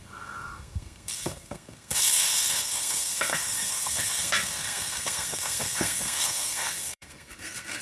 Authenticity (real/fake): fake